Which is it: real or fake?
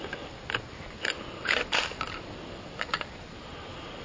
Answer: real